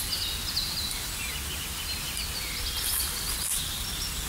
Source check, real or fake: real